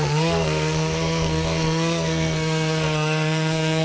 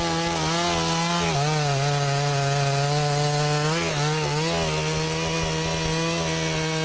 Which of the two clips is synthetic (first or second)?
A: first